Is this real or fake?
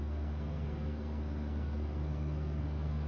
fake